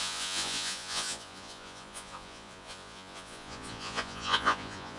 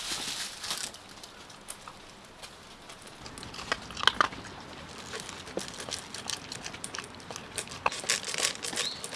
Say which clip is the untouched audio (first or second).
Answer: second